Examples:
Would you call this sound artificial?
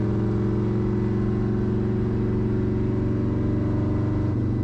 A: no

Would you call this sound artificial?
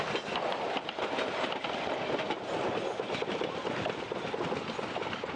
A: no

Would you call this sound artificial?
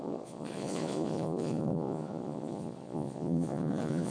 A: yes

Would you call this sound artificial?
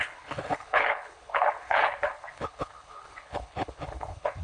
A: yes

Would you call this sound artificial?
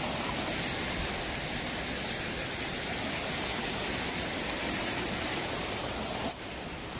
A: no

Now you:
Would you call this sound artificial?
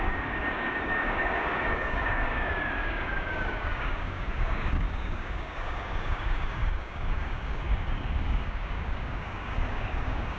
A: yes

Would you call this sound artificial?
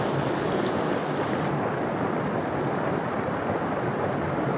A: no